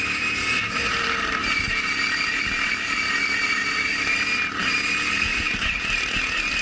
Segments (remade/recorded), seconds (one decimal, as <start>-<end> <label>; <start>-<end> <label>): 0.0-6.6 recorded